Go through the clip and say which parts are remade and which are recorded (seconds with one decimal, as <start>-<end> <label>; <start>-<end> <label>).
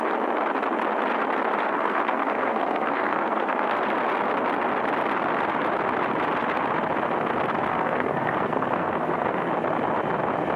0.0-1.6 recorded; 1.6-3.8 remade; 3.8-7.7 recorded; 7.7-9.5 remade; 9.5-10.6 recorded